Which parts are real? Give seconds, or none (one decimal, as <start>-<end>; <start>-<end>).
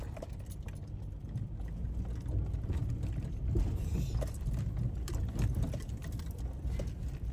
0.0-7.3